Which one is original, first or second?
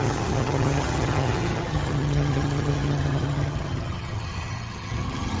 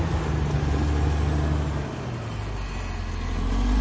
second